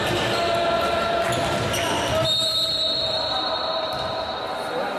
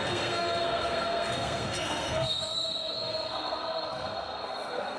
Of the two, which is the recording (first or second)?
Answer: first